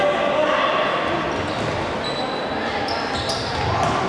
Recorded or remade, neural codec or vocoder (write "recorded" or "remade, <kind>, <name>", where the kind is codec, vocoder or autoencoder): recorded